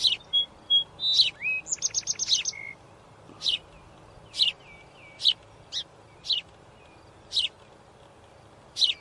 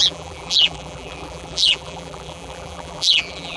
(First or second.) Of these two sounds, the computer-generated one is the second